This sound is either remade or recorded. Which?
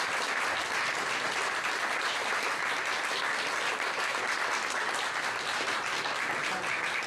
recorded